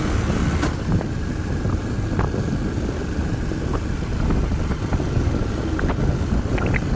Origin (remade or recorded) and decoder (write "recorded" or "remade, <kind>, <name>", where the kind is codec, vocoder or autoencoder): recorded